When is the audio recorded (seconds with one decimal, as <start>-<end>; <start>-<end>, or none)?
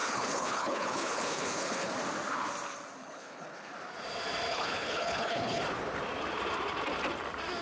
1.9-3.0; 3.7-4.5; 5.6-7.6